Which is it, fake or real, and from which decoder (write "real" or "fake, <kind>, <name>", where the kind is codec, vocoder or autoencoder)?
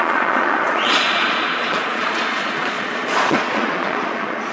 fake, vocoder, Vocos